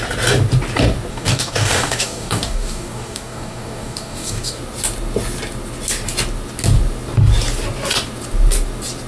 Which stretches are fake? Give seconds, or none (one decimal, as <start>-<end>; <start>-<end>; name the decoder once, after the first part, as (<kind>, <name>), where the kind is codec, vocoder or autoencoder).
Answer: 1.1-4.6 (codec, DAC)